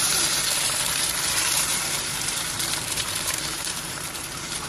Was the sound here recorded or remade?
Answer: remade